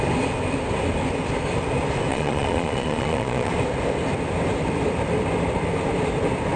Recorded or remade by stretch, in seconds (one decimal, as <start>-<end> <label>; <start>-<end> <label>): 0.0-2.1 recorded; 2.1-3.5 remade; 3.5-6.6 recorded